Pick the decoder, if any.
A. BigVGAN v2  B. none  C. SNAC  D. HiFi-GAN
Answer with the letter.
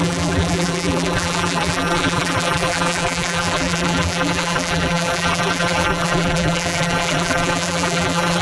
A